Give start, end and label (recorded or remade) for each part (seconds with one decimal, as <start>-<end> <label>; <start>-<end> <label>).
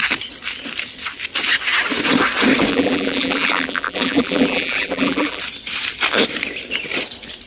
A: 0.0-2.7 recorded; 2.7-5.4 remade; 5.4-7.5 recorded